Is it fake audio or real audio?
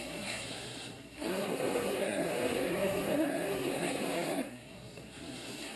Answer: fake